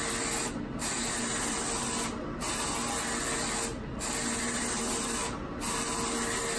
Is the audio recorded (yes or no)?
yes